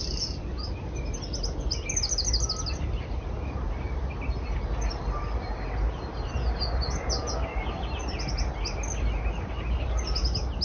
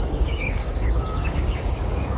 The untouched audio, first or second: first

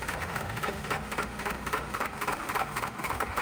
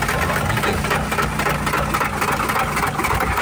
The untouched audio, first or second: second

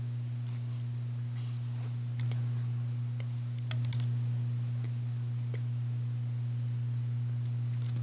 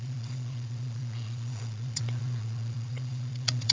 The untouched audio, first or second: first